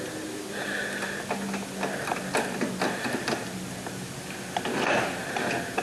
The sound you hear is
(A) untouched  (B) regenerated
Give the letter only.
A